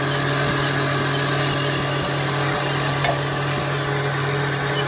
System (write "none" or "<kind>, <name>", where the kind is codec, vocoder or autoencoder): none